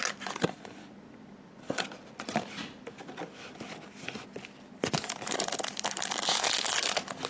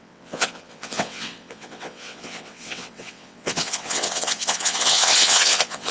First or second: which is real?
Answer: first